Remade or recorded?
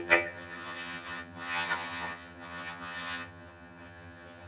remade